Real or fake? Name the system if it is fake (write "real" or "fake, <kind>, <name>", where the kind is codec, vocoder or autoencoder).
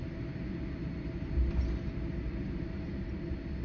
real